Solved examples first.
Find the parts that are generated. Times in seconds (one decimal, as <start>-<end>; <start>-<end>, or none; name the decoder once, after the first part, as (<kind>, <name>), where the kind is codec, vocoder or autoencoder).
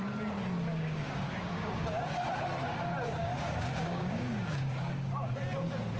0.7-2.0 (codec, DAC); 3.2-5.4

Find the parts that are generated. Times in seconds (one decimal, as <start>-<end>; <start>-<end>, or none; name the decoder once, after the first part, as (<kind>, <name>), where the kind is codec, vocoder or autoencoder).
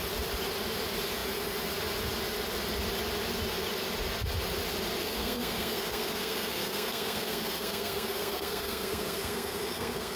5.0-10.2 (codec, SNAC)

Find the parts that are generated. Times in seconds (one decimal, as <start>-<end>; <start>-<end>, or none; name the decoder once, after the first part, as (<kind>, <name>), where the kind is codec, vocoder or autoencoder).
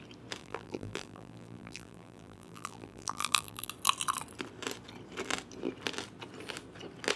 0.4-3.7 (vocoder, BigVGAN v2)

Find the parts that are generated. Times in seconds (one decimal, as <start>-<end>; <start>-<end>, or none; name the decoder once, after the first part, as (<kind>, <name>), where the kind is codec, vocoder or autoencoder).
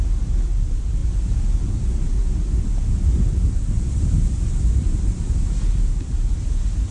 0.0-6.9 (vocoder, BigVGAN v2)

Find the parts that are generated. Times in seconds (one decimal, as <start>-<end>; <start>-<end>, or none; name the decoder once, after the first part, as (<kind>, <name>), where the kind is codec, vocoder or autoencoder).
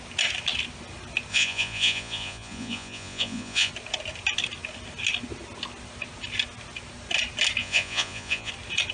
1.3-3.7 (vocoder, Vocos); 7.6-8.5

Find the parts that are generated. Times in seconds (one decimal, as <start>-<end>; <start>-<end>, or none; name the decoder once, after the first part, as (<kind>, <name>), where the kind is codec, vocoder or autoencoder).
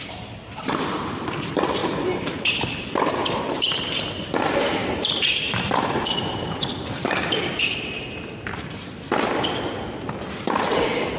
1.8-2.5 (vocoder, BigVGAN v2); 4.8-6.9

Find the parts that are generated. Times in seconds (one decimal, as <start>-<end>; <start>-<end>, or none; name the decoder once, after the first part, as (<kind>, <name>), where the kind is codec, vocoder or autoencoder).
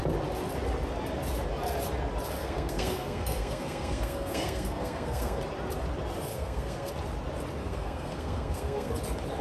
2.4-5.4 (codec, SNAC); 6.3-6.9; 7.6-8.9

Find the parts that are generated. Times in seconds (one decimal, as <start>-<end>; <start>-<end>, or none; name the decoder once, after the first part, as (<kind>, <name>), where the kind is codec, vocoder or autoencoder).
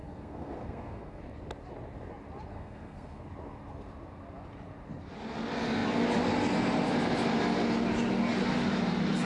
0.0-1.2 (codec, SNAC); 2.5-3.2